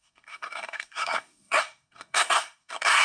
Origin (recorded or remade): remade